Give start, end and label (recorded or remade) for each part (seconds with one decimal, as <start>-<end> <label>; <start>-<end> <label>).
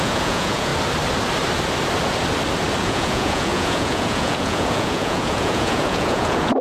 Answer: 0.0-0.7 remade; 0.7-2.8 recorded; 2.8-6.6 remade